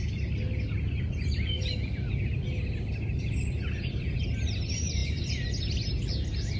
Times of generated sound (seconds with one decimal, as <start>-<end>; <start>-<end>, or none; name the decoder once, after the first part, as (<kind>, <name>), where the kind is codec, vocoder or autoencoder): none